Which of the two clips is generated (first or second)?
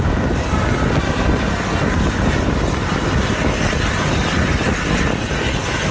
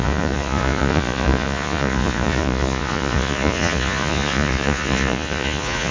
second